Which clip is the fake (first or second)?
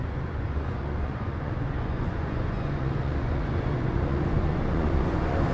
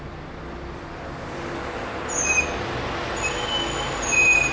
first